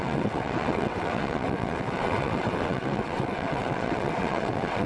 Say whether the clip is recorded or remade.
remade